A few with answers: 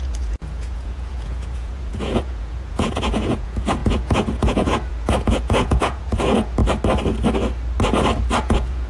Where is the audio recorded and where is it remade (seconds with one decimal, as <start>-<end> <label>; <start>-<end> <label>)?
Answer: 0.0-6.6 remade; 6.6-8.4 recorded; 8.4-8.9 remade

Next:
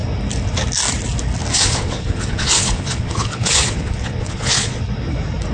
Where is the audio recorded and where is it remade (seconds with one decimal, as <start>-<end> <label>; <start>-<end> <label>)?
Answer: 0.0-1.5 recorded; 1.5-4.8 remade; 4.8-5.5 recorded

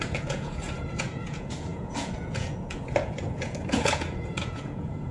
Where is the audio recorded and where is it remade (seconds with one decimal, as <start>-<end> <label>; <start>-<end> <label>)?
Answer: 0.0-5.1 remade